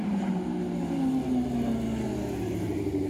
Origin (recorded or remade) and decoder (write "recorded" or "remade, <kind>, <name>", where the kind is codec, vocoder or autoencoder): recorded